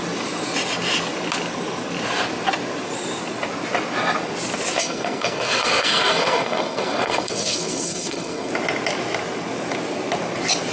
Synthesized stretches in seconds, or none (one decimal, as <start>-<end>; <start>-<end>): 4.8-8.5